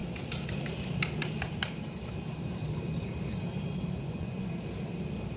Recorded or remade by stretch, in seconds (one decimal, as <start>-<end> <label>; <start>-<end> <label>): 0.0-4.0 recorded; 4.0-4.5 remade; 4.5-5.4 recorded